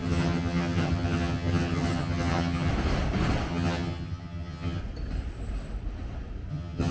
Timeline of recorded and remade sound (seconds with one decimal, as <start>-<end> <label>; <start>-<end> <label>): 0.0-2.7 remade; 2.7-3.5 recorded; 3.5-4.8 remade; 4.8-6.5 recorded; 6.5-6.9 remade